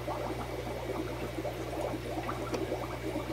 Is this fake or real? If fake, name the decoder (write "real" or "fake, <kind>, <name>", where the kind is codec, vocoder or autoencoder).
real